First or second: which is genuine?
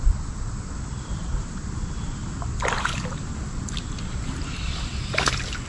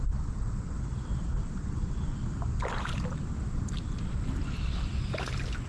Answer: second